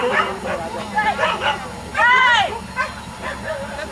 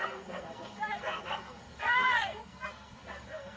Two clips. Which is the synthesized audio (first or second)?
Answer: second